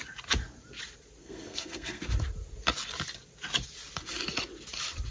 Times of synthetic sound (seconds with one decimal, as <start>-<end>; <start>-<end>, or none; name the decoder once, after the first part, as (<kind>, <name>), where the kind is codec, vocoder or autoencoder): 1.2-2.0 (codec, SNAC)